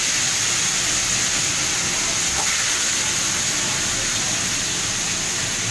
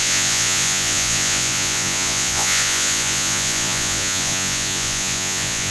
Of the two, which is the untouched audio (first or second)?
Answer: first